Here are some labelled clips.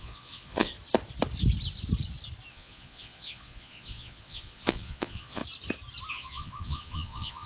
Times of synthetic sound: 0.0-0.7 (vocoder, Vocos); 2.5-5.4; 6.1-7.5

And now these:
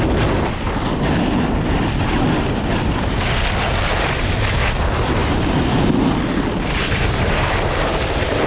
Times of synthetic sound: none

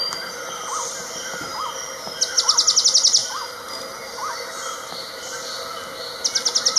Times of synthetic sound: 3.2-3.7 (vocoder, BigVGAN v2)

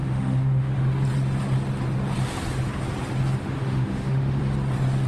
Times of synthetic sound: 0.0-0.7 (autoencoder, DAC-VAE); 3.4-4.4

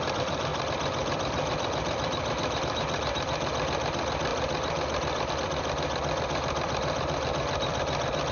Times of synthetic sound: 0.0-8.3 (vocoder, BigVGAN v2)

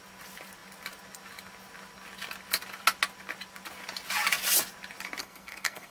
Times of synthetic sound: 5.2-5.9 (codec, SNAC)

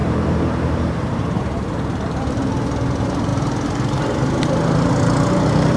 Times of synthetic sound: 0.0-1.4 (vocoder, BigVGAN v2); 3.3-4.0